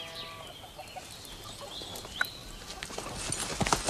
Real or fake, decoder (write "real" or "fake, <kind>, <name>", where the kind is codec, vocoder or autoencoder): real